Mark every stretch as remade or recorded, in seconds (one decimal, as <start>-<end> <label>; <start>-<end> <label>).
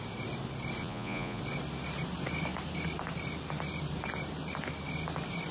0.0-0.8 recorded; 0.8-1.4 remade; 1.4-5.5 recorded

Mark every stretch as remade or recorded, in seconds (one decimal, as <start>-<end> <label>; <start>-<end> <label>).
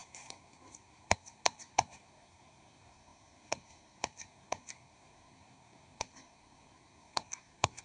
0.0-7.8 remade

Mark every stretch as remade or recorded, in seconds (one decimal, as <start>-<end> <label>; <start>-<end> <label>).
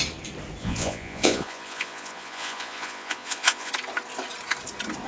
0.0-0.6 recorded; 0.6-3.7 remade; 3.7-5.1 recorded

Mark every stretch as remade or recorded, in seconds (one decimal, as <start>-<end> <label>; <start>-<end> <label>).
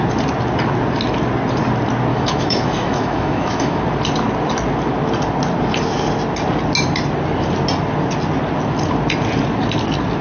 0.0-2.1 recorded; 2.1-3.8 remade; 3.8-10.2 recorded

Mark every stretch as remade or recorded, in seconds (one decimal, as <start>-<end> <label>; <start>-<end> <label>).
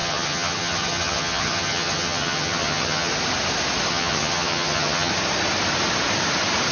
0.0-3.1 remade; 3.1-3.9 recorded; 3.9-5.1 remade; 5.1-6.7 recorded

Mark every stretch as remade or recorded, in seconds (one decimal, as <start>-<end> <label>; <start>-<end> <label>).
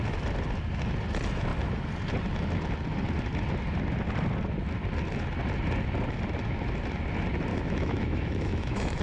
0.0-7.5 recorded; 7.5-9.0 remade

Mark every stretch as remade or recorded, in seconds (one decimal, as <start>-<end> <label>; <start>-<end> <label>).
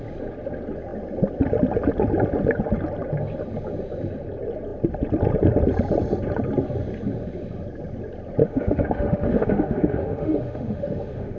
0.0-8.4 recorded; 8.4-11.4 remade